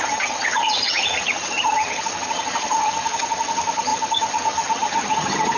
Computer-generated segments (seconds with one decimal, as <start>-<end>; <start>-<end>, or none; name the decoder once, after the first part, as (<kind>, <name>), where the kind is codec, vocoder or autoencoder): 0.0-5.6 (vocoder, HiFi-GAN)